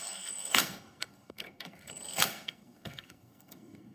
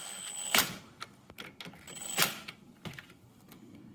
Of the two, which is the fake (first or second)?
first